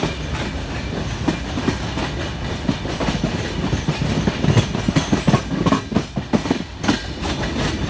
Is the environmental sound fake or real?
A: real